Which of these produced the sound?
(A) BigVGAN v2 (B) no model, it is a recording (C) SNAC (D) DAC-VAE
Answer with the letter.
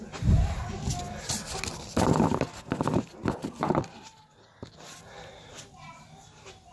B